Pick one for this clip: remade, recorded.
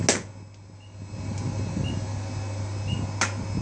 recorded